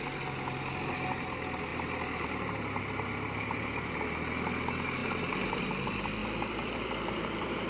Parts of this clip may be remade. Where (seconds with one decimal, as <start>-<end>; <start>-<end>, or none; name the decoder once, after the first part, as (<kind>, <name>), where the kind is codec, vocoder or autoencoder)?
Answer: 1.7-2.8 (vocoder, BigVGAN v2); 6.2-7.7